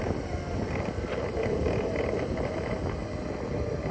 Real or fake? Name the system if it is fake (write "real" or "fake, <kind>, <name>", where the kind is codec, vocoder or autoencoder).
real